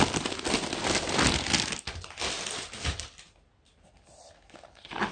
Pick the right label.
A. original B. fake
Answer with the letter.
A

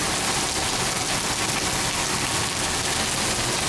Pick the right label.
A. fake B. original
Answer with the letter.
B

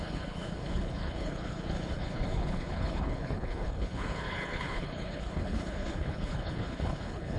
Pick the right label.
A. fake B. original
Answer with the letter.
A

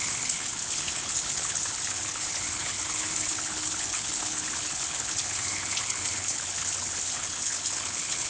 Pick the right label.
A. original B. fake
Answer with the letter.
B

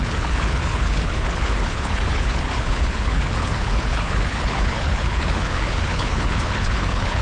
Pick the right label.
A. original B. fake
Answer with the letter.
B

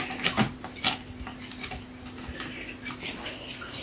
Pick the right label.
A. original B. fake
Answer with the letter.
A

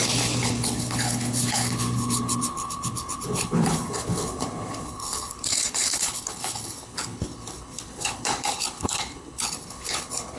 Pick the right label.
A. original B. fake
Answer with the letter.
B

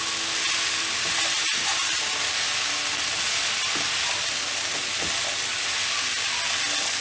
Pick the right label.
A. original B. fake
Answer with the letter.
A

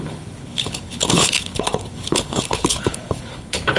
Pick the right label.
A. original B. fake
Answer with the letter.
B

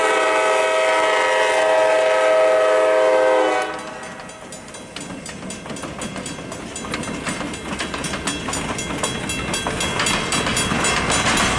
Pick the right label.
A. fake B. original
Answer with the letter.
B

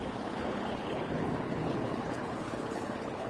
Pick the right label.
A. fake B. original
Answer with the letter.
A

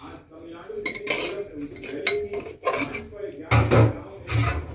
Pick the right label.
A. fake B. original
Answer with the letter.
B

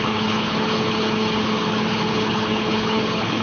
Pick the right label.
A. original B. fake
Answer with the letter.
B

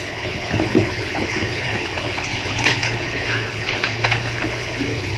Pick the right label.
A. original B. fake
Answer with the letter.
B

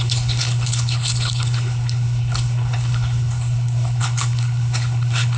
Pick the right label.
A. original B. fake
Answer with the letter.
B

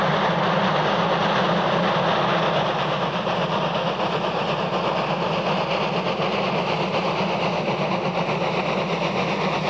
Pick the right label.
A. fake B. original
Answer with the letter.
B